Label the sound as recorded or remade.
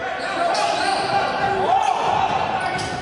recorded